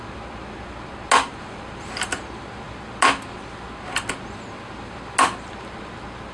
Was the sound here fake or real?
real